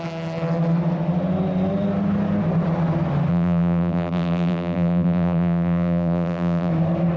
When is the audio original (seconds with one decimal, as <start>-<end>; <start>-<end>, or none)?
0.0-3.3; 6.7-7.2